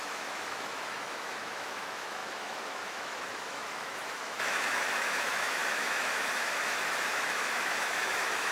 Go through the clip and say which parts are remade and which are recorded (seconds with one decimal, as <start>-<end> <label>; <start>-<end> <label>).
0.0-8.5 remade